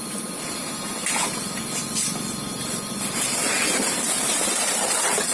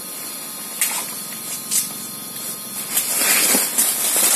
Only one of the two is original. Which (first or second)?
second